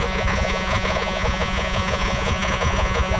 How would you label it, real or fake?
fake